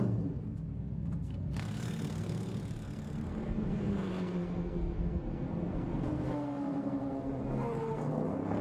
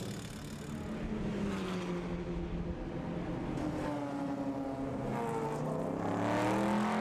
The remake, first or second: first